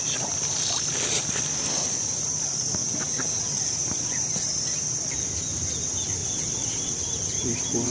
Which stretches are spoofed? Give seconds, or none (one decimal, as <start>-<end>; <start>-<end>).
2.8-3.6; 6.2-7.0